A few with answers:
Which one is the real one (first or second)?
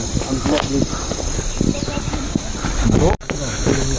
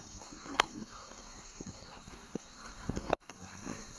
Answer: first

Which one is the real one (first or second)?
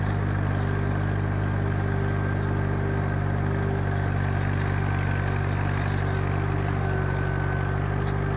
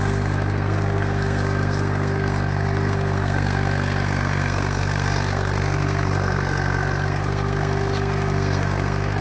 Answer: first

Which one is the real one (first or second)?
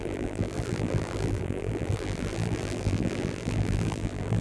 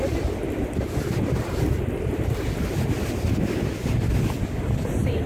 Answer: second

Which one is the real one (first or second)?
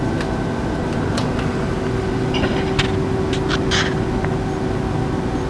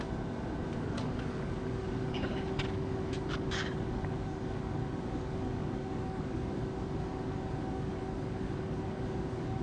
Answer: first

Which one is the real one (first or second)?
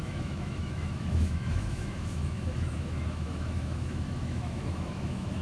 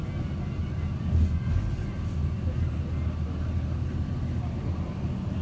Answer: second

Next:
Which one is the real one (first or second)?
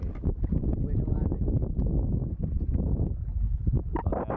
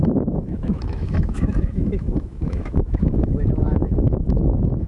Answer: first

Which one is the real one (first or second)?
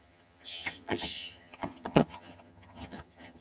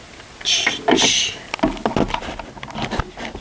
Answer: second